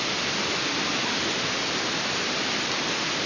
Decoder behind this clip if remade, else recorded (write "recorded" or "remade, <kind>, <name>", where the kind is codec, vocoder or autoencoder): recorded